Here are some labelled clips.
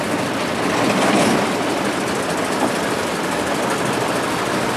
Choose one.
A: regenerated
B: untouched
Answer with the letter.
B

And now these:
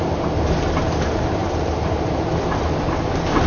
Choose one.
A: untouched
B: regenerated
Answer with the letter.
B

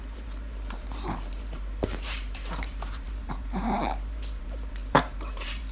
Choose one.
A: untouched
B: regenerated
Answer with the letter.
B